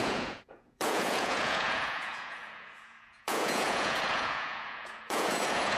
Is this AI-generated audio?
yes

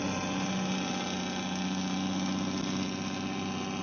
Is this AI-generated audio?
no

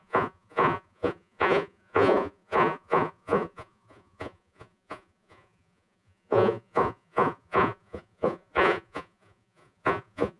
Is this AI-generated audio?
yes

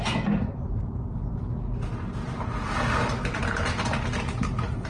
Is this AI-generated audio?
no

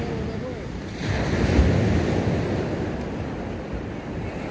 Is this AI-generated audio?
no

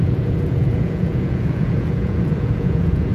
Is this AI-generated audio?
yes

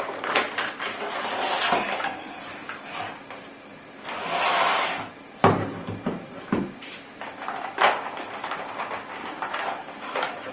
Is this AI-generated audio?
no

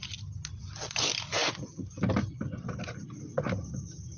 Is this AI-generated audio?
no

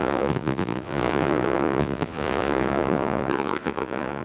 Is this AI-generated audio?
yes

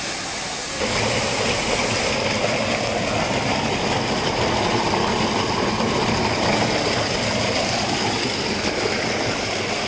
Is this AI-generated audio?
no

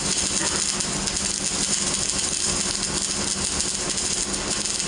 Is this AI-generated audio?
no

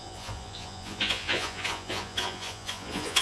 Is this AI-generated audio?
yes